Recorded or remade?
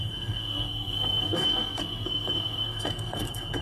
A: remade